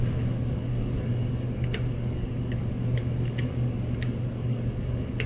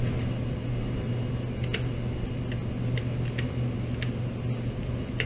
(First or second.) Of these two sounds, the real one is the second